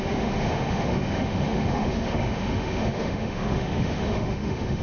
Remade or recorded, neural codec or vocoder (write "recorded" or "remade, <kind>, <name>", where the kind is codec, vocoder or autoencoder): remade, autoencoder, DAC-VAE